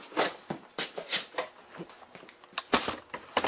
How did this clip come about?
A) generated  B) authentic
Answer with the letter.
B